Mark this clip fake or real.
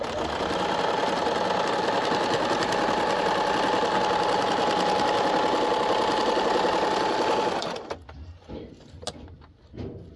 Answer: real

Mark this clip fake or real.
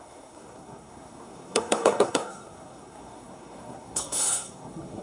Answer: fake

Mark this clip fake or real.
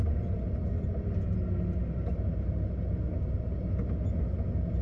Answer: real